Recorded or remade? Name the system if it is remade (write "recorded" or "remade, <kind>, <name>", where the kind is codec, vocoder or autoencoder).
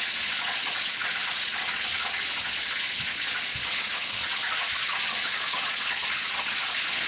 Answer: remade, vocoder, Vocos